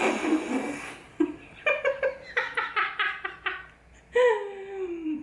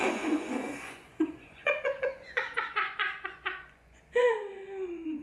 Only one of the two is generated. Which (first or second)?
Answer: second